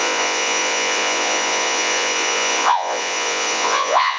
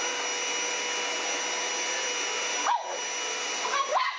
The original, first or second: second